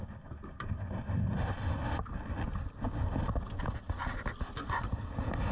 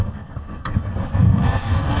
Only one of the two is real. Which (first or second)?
first